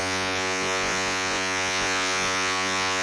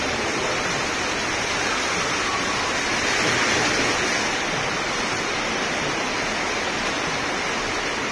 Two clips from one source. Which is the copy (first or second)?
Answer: first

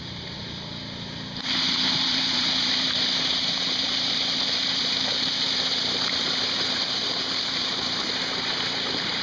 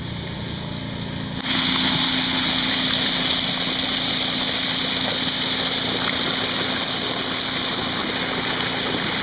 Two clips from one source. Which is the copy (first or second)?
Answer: first